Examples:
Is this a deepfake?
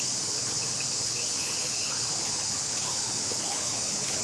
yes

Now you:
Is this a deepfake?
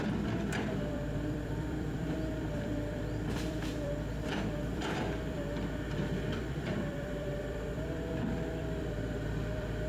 yes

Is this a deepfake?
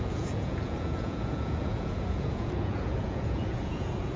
yes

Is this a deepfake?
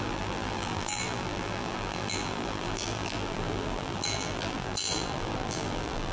yes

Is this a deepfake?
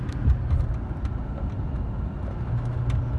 no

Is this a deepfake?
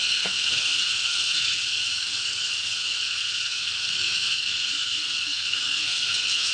yes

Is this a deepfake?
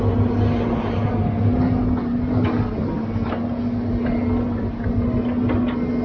no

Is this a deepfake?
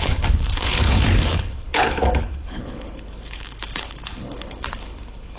yes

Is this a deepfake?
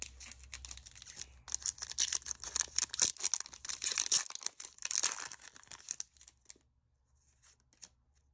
no